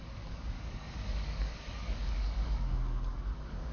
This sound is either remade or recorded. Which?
remade